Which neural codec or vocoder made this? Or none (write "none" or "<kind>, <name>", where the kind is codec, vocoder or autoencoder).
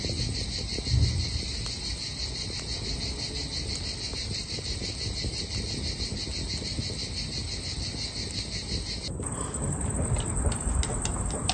none